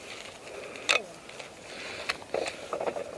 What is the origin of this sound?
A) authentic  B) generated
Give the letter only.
A